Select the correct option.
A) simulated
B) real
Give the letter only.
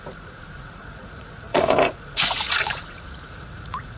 A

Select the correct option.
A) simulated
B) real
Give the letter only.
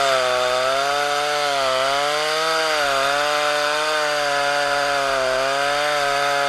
B